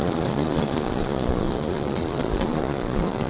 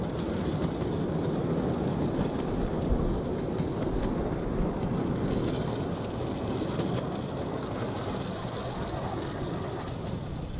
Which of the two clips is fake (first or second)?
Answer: first